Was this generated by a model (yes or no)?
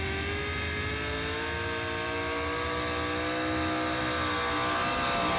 no